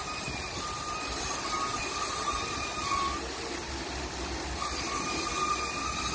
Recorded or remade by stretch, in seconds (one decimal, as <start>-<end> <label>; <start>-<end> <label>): 0.0-6.1 recorded